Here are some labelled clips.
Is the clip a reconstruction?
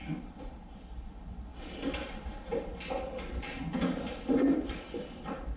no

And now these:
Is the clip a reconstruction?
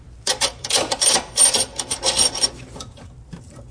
yes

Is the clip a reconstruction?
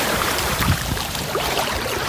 yes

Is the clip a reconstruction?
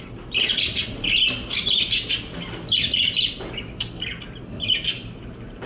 no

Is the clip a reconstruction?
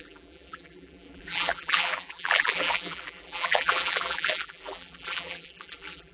yes